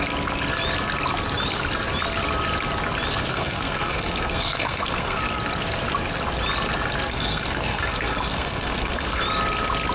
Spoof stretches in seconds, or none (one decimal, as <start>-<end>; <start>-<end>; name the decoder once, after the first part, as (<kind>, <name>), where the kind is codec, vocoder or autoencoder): 3.3-5.2 (codec, SNAC); 7.1-9.2